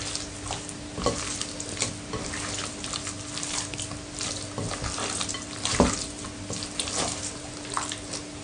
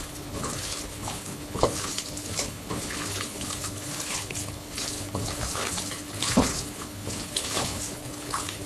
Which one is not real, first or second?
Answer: second